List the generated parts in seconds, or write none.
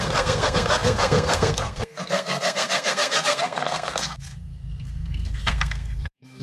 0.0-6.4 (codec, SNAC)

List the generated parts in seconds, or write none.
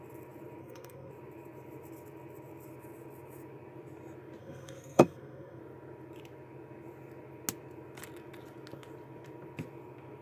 0.6-1.1 (codec, SNAC); 4.4-5.6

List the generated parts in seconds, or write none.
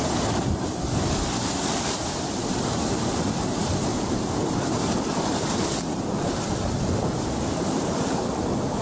none